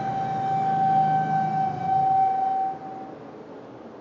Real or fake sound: real